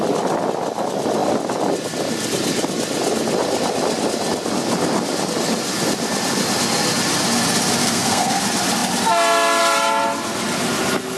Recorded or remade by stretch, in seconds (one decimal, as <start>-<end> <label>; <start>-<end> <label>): 0.0-7.8 recorded; 7.8-8.4 remade; 8.4-11.2 recorded